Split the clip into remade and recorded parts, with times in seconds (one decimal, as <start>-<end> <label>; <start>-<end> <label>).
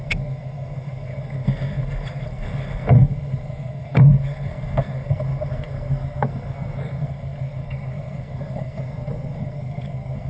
0.0-10.3 remade